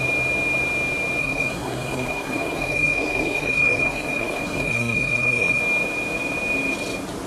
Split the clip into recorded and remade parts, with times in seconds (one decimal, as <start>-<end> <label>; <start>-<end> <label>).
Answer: 0.0-1.2 recorded; 1.2-5.6 remade; 5.6-7.3 recorded